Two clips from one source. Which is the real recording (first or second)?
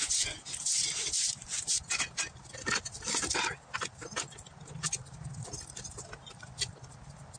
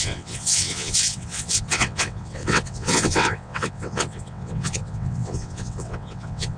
first